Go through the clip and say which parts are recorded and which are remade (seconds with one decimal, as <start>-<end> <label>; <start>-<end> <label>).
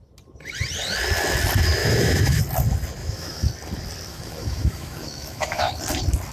0.0-1.8 recorded; 1.8-2.4 remade; 2.4-3.0 recorded; 3.0-3.5 remade; 3.5-4.1 recorded; 4.1-5.8 remade; 5.8-6.3 recorded